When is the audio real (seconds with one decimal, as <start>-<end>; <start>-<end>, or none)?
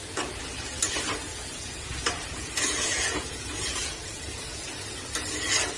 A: 0.0-1.3; 4.8-5.8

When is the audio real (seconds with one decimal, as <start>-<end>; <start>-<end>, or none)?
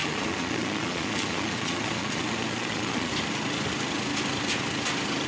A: 3.1-5.3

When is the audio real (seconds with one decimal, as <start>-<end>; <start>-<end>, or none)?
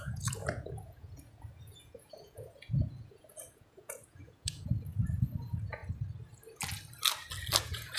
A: 5.8-7.6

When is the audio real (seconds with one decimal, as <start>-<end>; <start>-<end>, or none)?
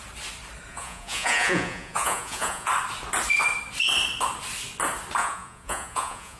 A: 0.0-0.7; 2.7-5.2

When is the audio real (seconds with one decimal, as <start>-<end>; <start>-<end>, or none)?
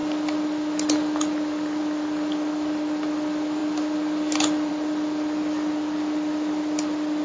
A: 0.0-7.2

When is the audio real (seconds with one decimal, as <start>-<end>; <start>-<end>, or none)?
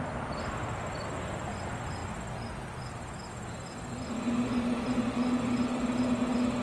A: 0.0-6.6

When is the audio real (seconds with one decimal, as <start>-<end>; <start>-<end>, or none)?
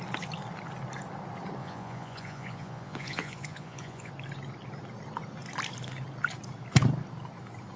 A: 0.0-1.6; 4.1-7.8